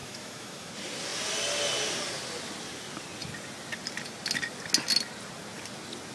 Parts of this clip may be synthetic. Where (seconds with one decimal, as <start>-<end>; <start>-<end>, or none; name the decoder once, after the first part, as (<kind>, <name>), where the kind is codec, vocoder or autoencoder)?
0.0-0.7 (autoencoder, DAC-VAE)